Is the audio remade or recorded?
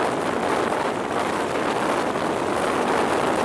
recorded